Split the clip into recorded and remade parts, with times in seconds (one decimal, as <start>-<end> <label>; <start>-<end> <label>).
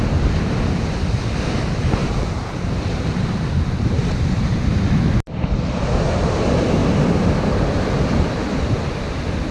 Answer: 0.0-2.0 recorded; 2.0-4.7 remade; 4.7-9.5 recorded